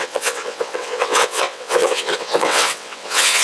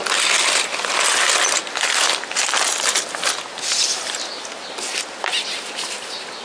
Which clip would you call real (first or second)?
second